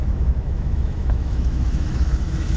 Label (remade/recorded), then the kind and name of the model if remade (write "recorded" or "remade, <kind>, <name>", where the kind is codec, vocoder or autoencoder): remade, autoencoder, DAC-VAE